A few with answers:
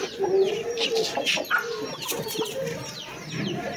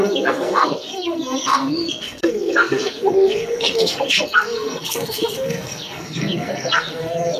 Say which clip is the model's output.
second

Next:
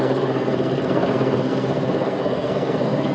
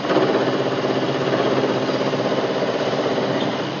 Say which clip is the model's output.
first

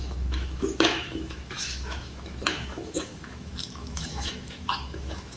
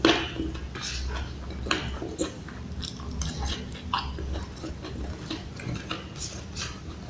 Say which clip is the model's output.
first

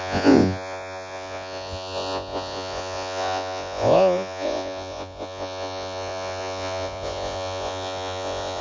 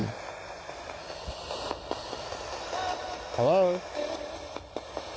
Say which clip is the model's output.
first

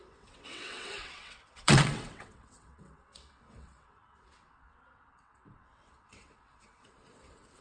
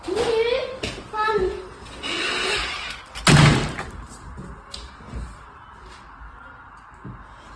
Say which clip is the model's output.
first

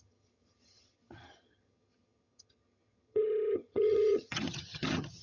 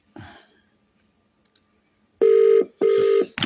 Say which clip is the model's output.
first